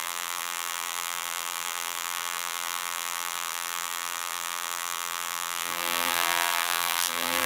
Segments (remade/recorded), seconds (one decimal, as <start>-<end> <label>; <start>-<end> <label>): 0.0-7.5 remade

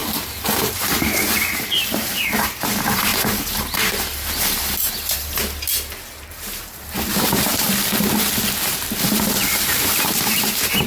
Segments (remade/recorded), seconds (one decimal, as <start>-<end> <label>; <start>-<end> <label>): 0.0-5.4 remade; 5.4-6.3 recorded; 6.3-7.5 remade; 7.5-9.6 recorded; 9.6-10.9 remade

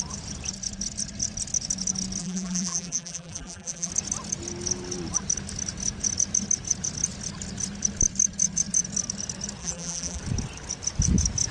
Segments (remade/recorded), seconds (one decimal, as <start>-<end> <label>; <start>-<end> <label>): 0.0-2.2 recorded; 2.2-3.9 remade; 3.9-9.6 recorded; 9.6-10.2 remade; 10.2-11.5 recorded

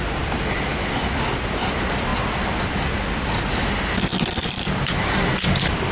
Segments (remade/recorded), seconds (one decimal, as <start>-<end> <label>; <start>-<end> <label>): 0.0-4.4 recorded; 4.4-5.3 remade; 5.3-5.9 recorded

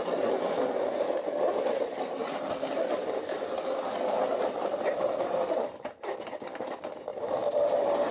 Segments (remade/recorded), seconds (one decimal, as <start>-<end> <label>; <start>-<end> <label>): 0.0-8.1 recorded